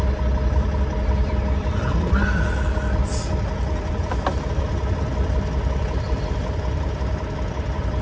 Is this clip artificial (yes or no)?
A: yes